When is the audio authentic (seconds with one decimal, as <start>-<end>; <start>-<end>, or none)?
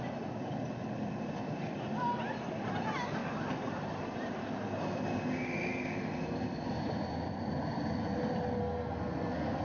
0.0-8.6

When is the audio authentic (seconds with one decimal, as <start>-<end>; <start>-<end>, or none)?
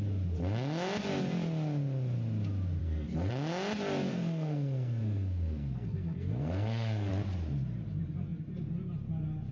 0.0-2.8; 3.3-4.1; 7.1-9.5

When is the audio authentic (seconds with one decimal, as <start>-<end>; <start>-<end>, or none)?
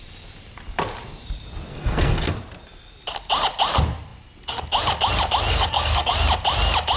0.0-1.7; 2.3-5.5; 6.1-7.0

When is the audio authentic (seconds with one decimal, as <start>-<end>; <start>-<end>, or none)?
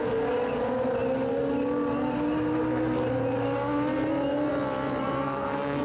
0.0-5.0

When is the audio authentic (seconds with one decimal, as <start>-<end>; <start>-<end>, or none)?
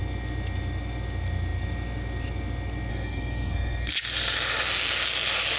0.0-2.9; 3.9-5.6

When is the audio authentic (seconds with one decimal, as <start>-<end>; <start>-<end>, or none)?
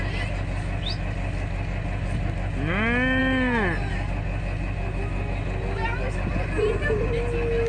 0.0-7.7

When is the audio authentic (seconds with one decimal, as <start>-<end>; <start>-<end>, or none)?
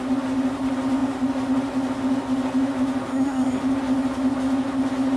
0.0-3.1; 3.6-5.2